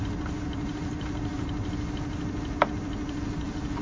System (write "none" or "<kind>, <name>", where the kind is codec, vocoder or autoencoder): none